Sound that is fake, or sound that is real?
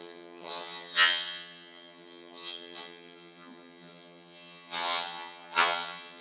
fake